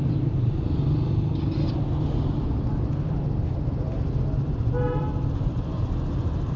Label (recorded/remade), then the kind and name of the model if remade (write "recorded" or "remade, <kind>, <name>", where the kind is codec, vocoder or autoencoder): recorded